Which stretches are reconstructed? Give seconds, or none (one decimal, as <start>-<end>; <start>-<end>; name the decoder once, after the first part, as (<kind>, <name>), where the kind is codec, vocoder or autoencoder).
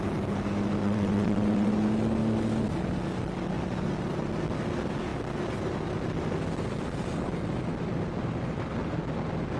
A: 0.8-1.7 (vocoder, WaveNeXt)